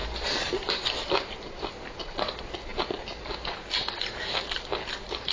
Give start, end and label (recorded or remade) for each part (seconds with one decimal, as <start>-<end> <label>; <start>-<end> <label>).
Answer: 0.0-5.3 recorded